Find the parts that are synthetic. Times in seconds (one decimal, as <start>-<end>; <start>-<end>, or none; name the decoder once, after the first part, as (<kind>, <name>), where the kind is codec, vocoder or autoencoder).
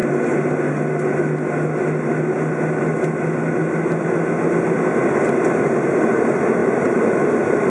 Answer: 6.6-7.7 (vocoder, BigVGAN v2)